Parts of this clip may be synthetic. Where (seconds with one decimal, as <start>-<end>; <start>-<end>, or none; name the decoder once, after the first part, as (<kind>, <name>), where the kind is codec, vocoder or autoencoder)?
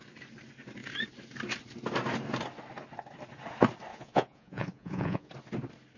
3.9-5.3 (vocoder, Vocos)